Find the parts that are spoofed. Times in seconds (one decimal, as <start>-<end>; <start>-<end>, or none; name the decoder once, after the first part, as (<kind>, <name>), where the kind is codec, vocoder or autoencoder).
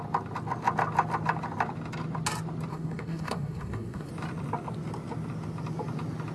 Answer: 2.7-4.1 (codec, SNAC)